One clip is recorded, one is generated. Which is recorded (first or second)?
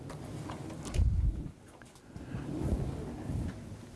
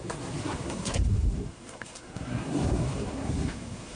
first